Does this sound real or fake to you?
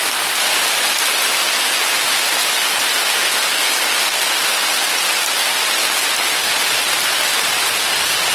real